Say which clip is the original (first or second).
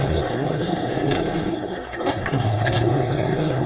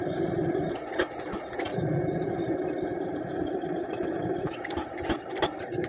second